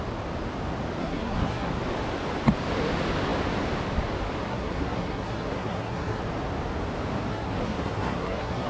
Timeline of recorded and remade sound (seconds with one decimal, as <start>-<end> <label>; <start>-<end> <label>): 0.0-1.0 recorded; 1.0-1.7 remade; 1.7-4.5 recorded; 4.5-6.2 remade; 6.2-7.3 recorded; 7.3-8.7 remade